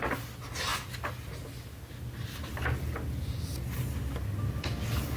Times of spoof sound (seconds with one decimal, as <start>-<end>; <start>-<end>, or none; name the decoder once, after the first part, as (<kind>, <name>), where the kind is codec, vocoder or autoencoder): none